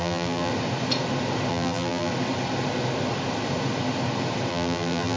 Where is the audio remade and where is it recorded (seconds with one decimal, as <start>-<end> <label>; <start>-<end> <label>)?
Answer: 0.0-0.5 remade; 0.5-1.5 recorded; 1.5-2.1 remade; 2.1-4.5 recorded; 4.5-5.2 remade